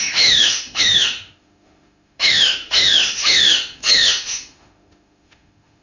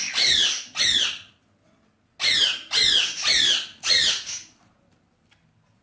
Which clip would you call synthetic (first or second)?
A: first